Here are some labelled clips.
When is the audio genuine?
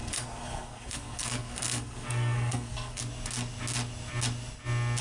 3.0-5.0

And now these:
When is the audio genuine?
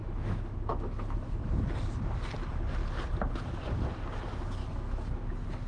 1.7-4.6; 5.3-5.7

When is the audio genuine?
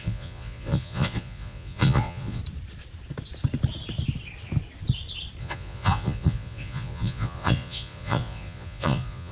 2.4-5.4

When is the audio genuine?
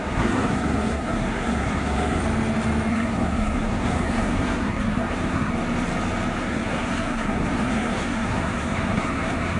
2.2-2.9; 5.5-6.4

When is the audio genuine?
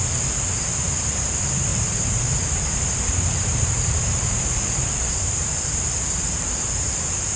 0.0-1.7; 4.9-5.4; 6.7-7.4